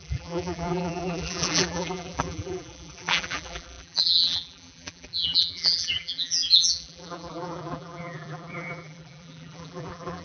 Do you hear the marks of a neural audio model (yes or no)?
yes